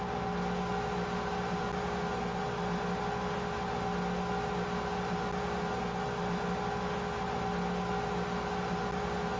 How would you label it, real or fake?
real